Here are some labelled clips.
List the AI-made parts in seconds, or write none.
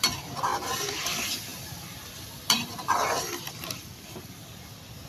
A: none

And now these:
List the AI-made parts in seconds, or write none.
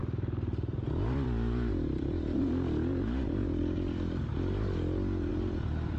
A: 0.0-2.9 (vocoder, BigVGAN v2); 3.4-4.3; 5.3-6.0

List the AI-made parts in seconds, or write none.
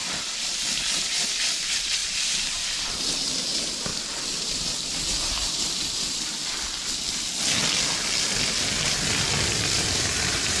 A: 0.0-6.4 (vocoder, BigVGAN v2); 9.8-10.6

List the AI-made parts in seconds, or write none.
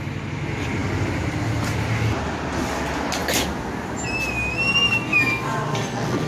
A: none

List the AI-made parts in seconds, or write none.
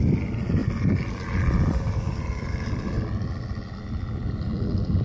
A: 0.0-5.0 (vocoder, BigVGAN v2)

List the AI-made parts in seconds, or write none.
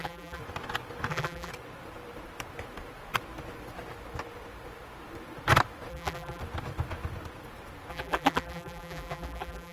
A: 0.0-0.4 (vocoder, BigVGAN v2); 1.1-1.5; 5.9-6.4; 7.9-9.7